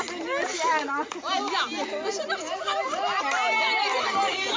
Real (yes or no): yes